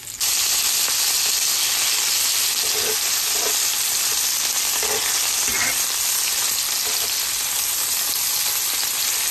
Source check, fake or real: real